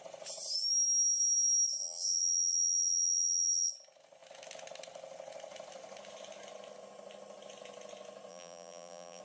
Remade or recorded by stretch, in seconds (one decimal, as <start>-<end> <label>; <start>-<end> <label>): 0.0-1.8 recorded; 1.8-3.7 remade; 3.7-8.3 recorded; 8.3-9.2 remade

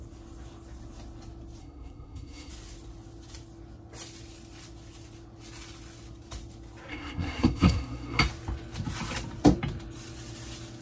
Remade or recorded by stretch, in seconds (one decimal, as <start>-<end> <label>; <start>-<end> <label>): 0.0-1.6 recorded; 1.6-2.5 remade; 2.5-6.9 recorded; 6.9-8.2 remade; 8.2-10.8 recorded

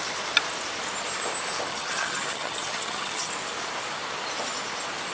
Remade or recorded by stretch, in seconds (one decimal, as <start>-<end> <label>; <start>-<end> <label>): 0.0-1.7 recorded; 1.7-3.3 remade; 3.3-5.1 recorded

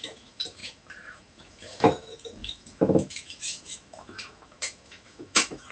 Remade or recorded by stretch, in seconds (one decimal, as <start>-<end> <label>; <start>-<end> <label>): 0.0-5.7 remade

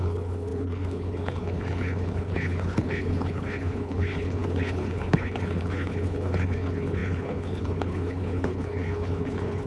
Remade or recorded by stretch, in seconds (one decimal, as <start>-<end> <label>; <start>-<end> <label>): 0.0-9.7 remade

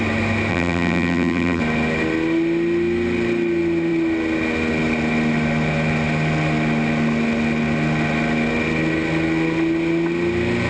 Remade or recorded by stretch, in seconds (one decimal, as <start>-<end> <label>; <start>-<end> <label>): 0.0-0.5 recorded; 0.5-1.6 remade; 1.6-10.7 recorded